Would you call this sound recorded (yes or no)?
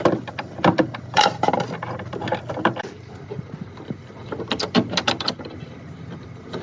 no